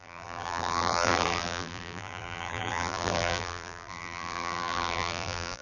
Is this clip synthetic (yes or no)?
yes